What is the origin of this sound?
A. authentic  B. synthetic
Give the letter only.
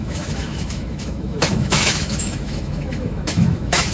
B